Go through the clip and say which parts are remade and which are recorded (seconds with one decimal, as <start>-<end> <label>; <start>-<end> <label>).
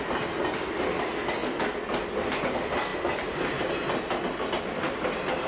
0.0-5.5 recorded